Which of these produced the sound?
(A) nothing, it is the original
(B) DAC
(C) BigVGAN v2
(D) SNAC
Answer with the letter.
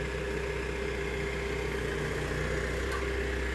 A